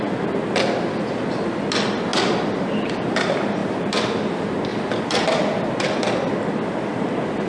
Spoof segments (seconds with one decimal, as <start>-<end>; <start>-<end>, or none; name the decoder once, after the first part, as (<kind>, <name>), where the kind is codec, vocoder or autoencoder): 3.6-4.2 (vocoder, BigVGAN v2); 4.7-5.7